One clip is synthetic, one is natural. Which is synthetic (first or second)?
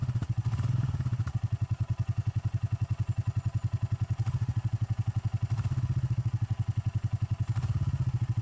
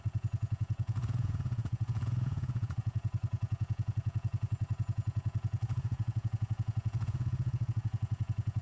second